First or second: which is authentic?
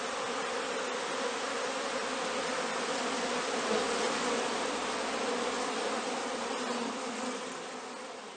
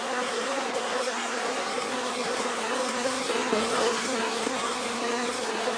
first